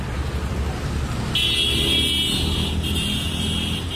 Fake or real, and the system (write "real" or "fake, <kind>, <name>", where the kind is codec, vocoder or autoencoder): real